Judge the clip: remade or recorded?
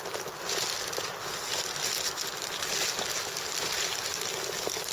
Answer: recorded